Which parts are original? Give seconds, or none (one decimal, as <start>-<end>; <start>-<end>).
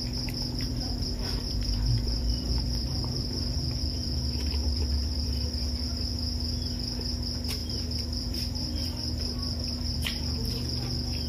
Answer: 0.0-0.7; 5.5-7.6; 10.2-11.3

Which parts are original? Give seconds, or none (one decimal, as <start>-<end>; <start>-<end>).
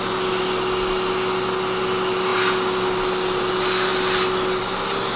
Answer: 0.0-5.2